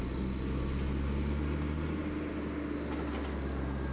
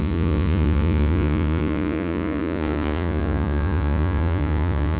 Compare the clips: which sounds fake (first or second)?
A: second